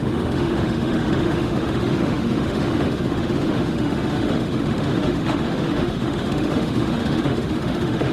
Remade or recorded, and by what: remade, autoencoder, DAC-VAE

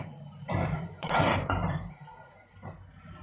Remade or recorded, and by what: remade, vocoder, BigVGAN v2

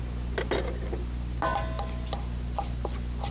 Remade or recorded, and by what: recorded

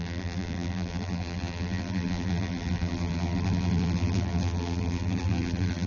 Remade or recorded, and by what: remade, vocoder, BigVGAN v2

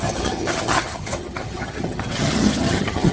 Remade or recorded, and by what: remade, vocoder, HiFi-GAN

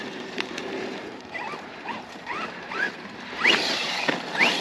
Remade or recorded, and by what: remade, vocoder, BigVGAN v2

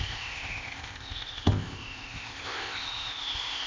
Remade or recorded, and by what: remade, codec, ZipCodec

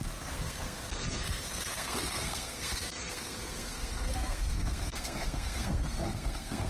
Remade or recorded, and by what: remade, codec, SNAC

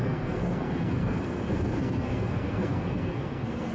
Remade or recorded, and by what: remade, codec, SNAC